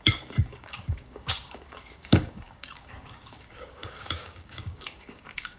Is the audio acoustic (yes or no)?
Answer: no